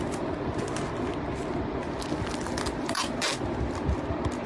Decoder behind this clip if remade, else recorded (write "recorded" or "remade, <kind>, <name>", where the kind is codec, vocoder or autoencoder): recorded